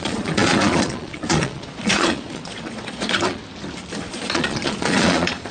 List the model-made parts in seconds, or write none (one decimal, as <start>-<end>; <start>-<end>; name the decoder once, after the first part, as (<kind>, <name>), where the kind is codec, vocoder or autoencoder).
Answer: 0.0-3.4 (vocoder, Vocos); 3.9-5.5